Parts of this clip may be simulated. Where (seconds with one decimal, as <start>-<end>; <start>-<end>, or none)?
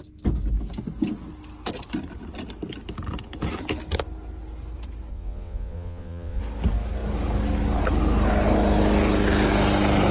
5.1-6.4